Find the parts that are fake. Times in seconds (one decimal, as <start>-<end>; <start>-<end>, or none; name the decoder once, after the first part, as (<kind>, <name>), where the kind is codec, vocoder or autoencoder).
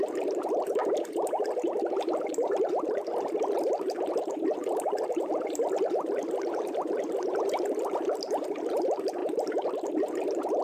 0.0-0.8 (vocoder, BigVGAN v2); 2.3-10.6